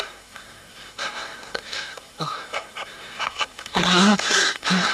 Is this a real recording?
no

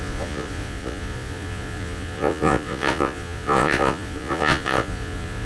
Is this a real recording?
no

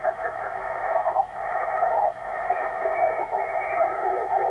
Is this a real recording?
no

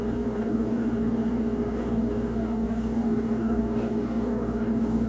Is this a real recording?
no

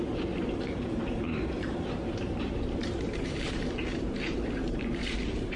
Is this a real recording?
no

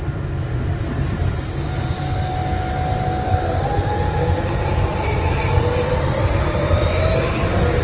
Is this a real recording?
yes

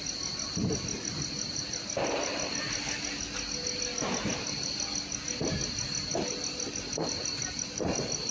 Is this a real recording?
yes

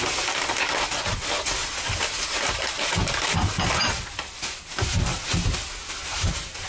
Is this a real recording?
yes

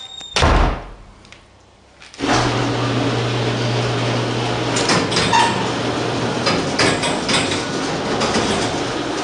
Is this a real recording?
yes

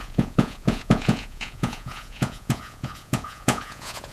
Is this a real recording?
no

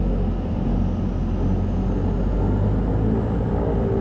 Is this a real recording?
yes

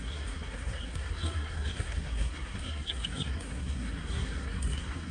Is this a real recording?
no